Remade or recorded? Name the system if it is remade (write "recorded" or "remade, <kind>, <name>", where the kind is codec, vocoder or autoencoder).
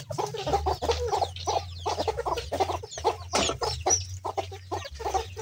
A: recorded